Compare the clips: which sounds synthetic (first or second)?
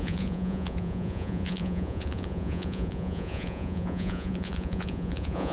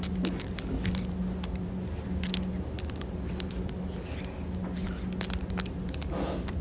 first